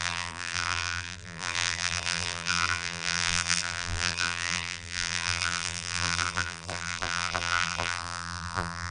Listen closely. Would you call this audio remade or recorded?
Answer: remade